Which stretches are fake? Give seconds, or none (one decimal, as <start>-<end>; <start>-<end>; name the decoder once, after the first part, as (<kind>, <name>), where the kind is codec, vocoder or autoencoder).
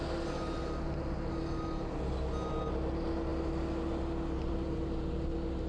none